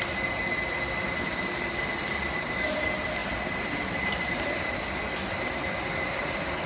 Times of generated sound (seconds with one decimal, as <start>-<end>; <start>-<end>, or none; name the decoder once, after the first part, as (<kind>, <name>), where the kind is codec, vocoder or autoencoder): none